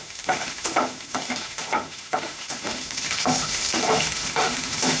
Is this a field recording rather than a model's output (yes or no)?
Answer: no